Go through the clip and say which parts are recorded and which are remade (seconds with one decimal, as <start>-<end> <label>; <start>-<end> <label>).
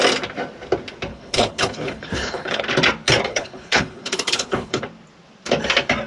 0.0-1.1 recorded; 1.1-2.6 remade; 2.6-3.3 recorded; 3.3-4.8 remade; 4.8-6.1 recorded